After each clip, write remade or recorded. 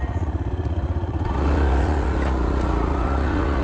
remade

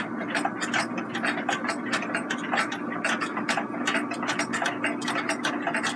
recorded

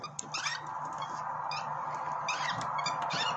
recorded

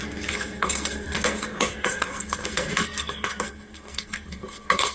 remade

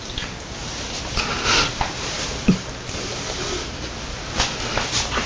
recorded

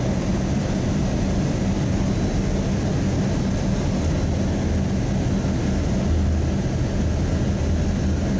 recorded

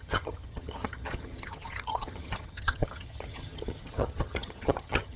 remade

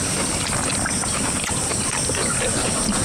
recorded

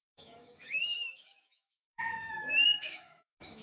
remade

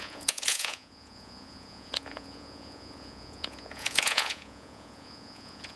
remade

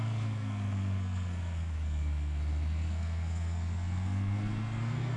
remade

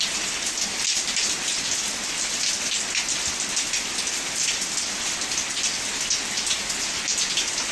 recorded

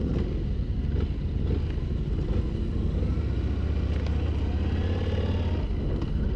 recorded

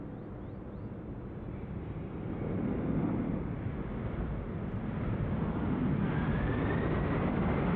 recorded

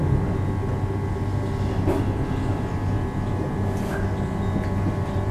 recorded